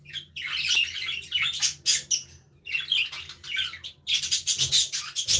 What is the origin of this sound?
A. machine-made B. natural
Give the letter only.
B